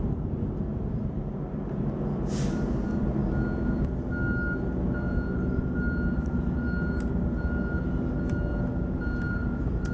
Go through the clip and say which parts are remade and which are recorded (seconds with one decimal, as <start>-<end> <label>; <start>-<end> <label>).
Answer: 0.0-9.9 recorded